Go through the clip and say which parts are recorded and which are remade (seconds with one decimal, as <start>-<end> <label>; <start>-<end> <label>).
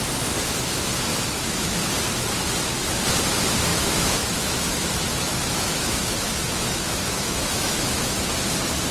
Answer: 0.0-1.1 recorded; 1.1-1.9 remade; 1.9-3.7 recorded; 3.7-8.3 remade; 8.3-8.9 recorded